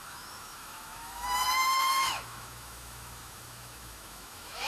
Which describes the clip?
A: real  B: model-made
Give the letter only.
B